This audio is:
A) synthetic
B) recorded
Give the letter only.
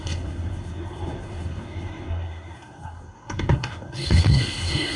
A